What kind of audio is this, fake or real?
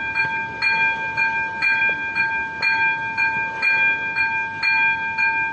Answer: real